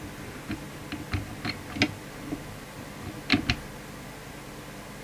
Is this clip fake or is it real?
real